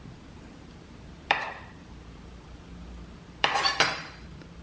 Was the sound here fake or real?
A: fake